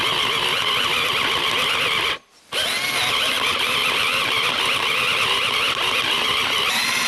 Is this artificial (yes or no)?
no